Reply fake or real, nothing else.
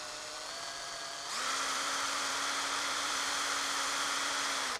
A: fake